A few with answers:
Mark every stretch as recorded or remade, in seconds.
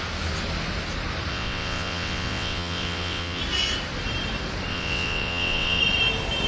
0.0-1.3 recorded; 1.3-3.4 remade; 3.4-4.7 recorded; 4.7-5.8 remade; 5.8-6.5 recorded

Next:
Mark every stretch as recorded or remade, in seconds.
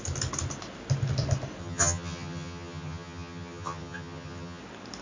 0.0-1.6 recorded; 1.6-4.6 remade; 4.6-5.0 recorded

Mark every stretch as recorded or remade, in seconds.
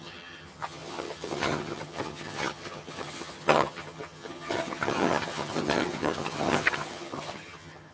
0.0-7.9 remade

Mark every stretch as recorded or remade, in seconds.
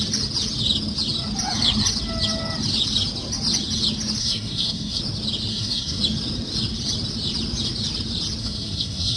0.0-4.2 recorded; 4.2-5.0 remade; 5.0-5.5 recorded; 5.5-6.0 remade; 6.0-8.4 recorded; 8.4-9.2 remade